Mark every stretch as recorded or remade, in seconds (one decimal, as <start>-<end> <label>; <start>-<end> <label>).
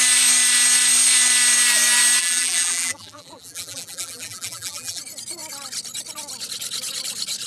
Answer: 0.0-2.2 recorded; 2.2-5.0 remade; 5.0-7.5 recorded